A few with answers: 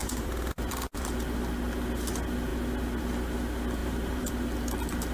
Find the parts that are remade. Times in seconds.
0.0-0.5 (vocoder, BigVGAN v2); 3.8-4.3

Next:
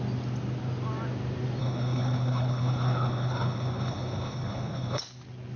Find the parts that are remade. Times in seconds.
1.6-5.0 (codec, HILCodec)

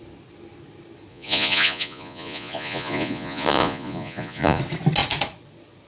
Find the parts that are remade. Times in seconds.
1.1-4.6 (vocoder, Vocos)

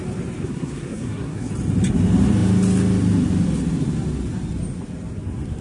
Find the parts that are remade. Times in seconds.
0.4-1.5 (codec, SNAC)

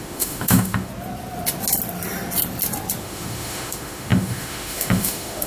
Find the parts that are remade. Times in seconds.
0.0-0.9 (autoencoder, DAC-VAE); 3.0-5.5

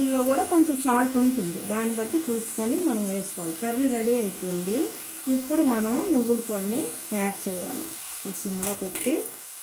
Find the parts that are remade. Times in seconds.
0.0-2.8 (codec, DAC); 3.3-9.6

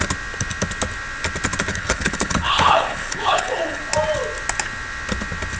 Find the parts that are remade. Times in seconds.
1.7-3.8 (codec, HILCodec)